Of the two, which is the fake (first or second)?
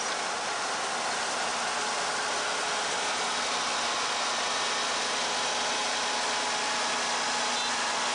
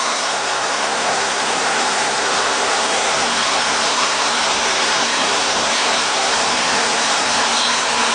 second